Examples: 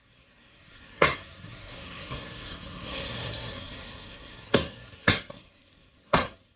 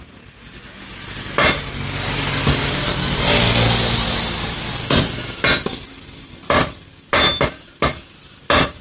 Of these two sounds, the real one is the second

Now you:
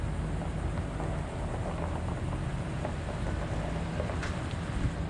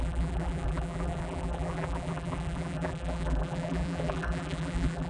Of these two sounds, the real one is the first